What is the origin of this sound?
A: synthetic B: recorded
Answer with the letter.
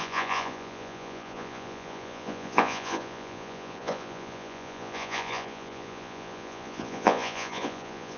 A